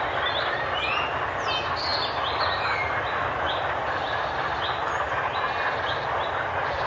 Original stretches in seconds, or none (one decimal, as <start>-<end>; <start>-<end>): 0.0-6.9